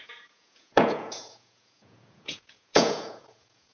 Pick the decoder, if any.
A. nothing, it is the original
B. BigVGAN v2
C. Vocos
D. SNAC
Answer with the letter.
C